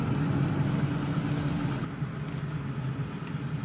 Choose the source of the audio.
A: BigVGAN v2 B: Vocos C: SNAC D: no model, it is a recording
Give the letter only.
D